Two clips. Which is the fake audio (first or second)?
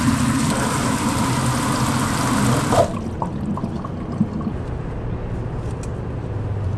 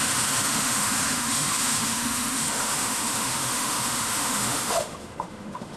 second